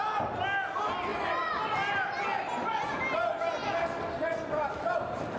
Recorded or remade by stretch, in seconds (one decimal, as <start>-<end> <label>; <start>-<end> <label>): 0.0-5.4 recorded